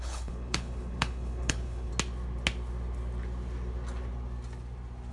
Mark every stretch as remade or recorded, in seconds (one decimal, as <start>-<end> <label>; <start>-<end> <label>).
0.0-1.9 remade; 1.9-5.1 recorded

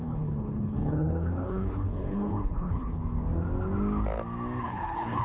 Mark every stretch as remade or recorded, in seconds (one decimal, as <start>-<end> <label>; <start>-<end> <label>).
0.0-3.0 remade; 3.0-4.6 recorded; 4.6-5.2 remade

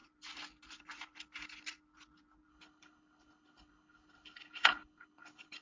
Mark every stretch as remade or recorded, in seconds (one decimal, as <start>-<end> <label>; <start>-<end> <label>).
0.0-2.5 recorded; 2.5-5.6 remade

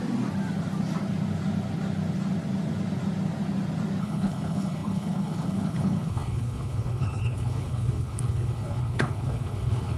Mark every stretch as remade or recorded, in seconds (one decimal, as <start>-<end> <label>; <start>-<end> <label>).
0.0-4.0 recorded; 4.0-10.0 remade

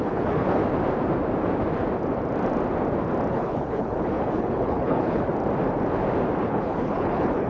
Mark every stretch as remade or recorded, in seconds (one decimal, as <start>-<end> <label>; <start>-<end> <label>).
0.0-0.6 remade; 0.6-3.3 recorded; 3.3-5.3 remade; 5.3-6.4 recorded; 6.4-7.5 remade

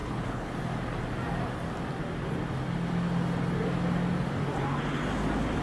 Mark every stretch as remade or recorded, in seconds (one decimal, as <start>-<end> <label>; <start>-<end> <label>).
0.0-0.5 remade; 0.5-5.6 recorded

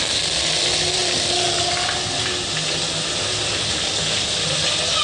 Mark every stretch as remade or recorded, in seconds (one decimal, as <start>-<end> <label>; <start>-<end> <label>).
0.0-5.0 recorded

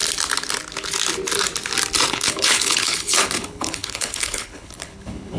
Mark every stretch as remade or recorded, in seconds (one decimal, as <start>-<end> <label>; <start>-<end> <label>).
0.0-2.1 recorded; 2.1-5.4 remade